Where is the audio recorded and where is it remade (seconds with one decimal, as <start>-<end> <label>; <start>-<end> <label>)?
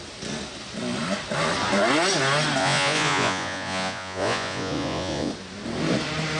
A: 0.0-2.6 recorded; 2.6-5.3 remade; 5.3-6.4 recorded